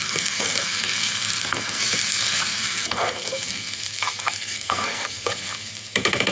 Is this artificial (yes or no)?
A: yes